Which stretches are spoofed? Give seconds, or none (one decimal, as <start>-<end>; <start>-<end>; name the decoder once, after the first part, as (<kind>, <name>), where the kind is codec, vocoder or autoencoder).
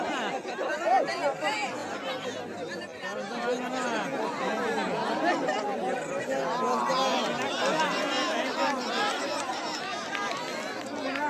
1.8-2.4 (vocoder, BigVGAN v2); 9.5-10.8